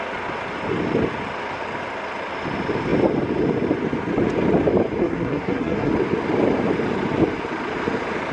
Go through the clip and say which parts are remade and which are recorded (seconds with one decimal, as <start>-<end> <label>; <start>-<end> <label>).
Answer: 0.0-5.0 recorded; 5.0-5.9 remade; 5.9-8.3 recorded